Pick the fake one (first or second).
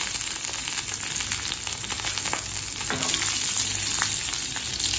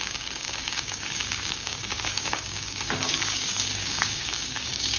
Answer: second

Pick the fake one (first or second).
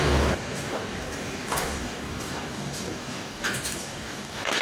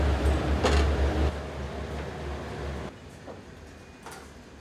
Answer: first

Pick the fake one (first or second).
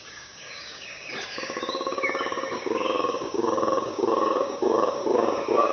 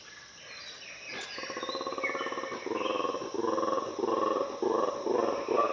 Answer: first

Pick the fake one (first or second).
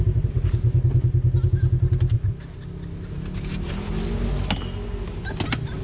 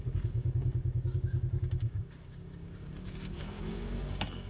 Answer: second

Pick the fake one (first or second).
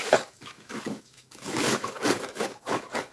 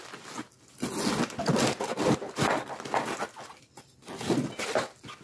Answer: first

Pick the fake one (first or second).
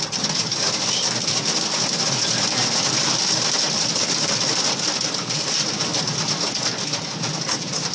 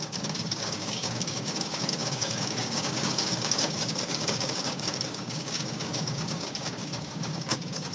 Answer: second